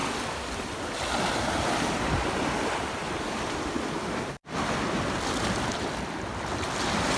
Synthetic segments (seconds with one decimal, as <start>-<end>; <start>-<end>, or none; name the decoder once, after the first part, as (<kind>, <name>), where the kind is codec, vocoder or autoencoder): none

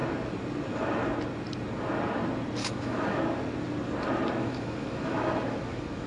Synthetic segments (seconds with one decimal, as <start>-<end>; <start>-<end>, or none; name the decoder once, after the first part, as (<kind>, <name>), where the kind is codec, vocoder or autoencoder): 2.6-3.2 (autoencoder, DAC-VAE); 4.4-6.1

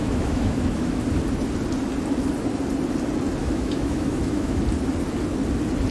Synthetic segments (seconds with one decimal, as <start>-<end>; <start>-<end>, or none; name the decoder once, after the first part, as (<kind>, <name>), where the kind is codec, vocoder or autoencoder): 0.0-1.0 (autoencoder, DAC-VAE); 3.4-4.6

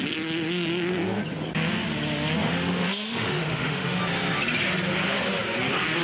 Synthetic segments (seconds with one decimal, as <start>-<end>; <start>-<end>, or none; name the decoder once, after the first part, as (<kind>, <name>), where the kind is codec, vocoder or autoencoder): 2.4-4.0 (autoencoder, DAC-VAE)

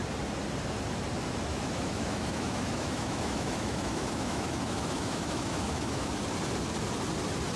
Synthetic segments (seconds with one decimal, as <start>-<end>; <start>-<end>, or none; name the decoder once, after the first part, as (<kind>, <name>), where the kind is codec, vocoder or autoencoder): 1.5-6.1 (autoencoder, DAC-VAE)

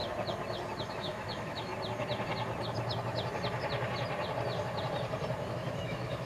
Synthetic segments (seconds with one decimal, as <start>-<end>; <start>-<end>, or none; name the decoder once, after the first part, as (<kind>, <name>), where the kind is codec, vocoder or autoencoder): 0.9-1.7 (autoencoder, DAC-VAE); 5.5-6.3

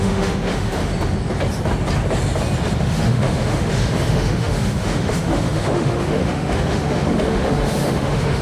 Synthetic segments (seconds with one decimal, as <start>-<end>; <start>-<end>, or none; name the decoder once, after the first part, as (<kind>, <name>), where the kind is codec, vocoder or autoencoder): 0.0-0.8 (autoencoder, DAC-VAE); 2.8-8.4